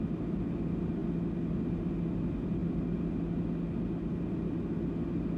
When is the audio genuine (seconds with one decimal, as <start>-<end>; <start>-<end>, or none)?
0.0-5.4